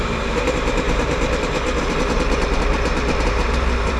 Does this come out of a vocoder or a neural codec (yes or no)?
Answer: yes